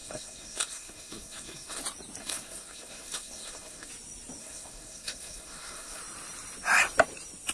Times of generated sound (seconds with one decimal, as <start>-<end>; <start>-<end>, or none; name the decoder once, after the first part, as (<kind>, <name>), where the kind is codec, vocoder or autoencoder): 0.0-1.8 (codec, SNAC); 2.2-3.9; 4.4-6.0